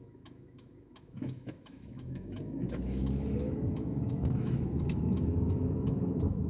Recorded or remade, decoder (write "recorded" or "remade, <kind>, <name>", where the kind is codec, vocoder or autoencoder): remade, autoencoder, DAC-VAE